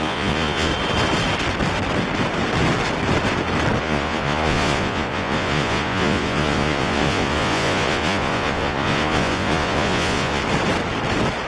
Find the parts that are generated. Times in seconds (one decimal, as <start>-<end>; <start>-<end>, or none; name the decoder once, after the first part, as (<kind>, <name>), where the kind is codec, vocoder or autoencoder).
0.0-0.7 (vocoder, Vocos); 3.8-10.4